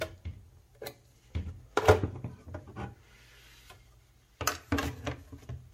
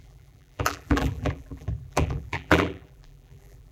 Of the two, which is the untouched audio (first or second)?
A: first